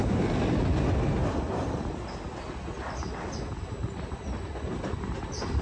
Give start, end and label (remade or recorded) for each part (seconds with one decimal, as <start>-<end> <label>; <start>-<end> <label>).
0.0-5.6 recorded